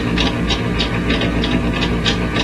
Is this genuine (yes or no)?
yes